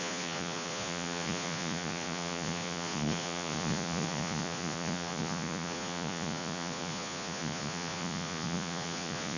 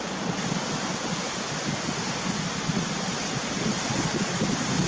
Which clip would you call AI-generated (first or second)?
first